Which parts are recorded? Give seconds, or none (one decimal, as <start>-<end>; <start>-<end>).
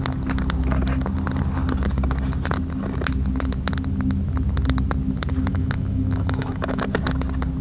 0.0-5.5; 6.8-7.6